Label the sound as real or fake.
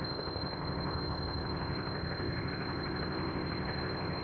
fake